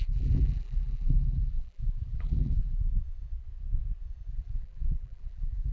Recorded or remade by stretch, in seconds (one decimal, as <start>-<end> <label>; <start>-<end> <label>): 0.0-2.9 remade; 2.9-4.3 recorded; 4.3-5.7 remade